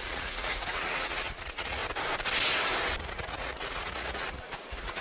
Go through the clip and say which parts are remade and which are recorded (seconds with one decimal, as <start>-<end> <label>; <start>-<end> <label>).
0.0-1.8 remade; 1.8-3.0 recorded; 3.0-5.0 remade